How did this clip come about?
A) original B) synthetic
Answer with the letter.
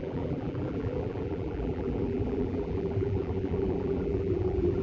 B